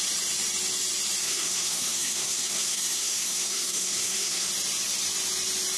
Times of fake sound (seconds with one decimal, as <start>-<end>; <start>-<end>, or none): 1.2-4.5